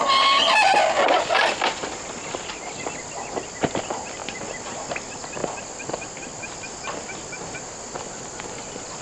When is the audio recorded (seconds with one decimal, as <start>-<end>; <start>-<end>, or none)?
0.0-9.0